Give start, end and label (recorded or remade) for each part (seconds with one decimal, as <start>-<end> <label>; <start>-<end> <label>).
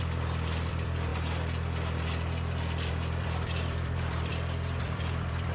0.0-1.1 remade; 1.1-2.9 recorded; 2.9-4.3 remade; 4.3-4.8 recorded; 4.8-5.5 remade